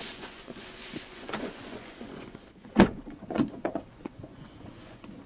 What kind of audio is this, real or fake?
fake